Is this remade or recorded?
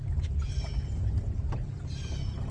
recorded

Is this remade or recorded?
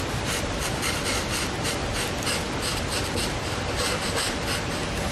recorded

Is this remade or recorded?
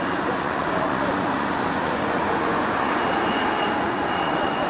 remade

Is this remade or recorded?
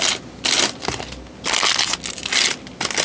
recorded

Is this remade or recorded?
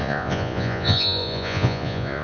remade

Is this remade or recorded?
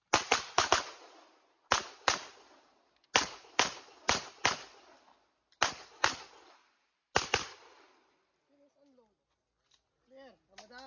recorded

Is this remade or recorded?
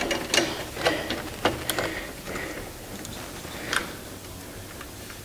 recorded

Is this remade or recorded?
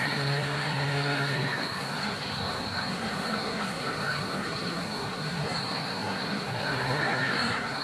remade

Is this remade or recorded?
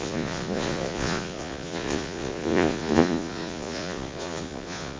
remade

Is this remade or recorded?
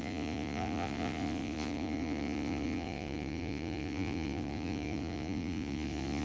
remade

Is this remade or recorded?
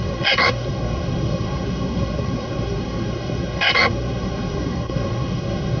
remade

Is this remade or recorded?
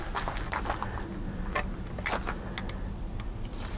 recorded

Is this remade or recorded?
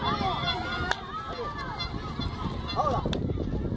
recorded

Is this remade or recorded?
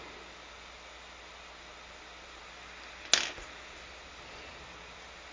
recorded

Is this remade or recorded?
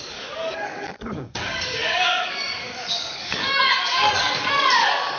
remade